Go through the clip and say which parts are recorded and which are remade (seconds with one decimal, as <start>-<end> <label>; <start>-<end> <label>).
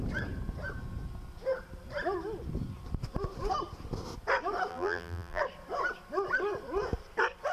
0.0-4.7 recorded; 4.7-5.4 remade; 5.4-7.5 recorded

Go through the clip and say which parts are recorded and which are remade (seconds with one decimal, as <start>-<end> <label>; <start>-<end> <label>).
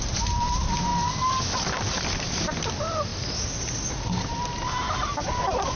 0.0-5.8 recorded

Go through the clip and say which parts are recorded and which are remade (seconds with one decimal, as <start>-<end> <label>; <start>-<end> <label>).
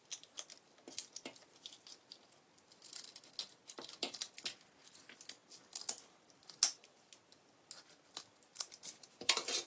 0.0-8.5 recorded; 8.5-9.7 remade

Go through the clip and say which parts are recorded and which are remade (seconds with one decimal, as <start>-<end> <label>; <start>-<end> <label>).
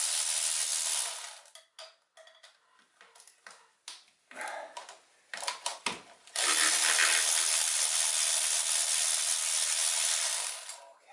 0.0-11.1 recorded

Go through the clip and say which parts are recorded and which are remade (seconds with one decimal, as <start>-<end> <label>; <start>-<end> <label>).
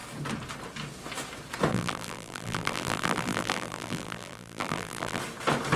0.0-1.7 recorded; 1.7-5.2 remade; 5.2-5.8 recorded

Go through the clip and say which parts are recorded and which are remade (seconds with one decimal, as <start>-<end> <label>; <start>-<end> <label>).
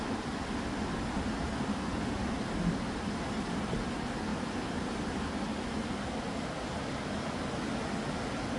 0.0-4.3 recorded; 4.3-5.0 remade; 5.0-8.6 recorded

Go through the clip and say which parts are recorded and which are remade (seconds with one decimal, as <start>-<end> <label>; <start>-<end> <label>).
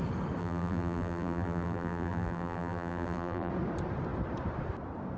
0.0-0.4 recorded; 0.4-3.5 remade; 3.5-5.2 recorded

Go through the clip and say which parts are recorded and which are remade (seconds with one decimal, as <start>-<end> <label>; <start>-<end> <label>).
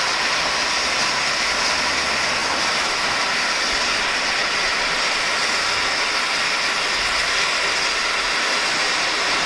0.0-2.4 recorded; 2.4-3.6 remade; 3.6-4.4 recorded; 4.4-5.0 remade; 5.0-9.5 recorded